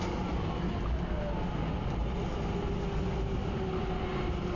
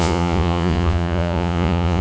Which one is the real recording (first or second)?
first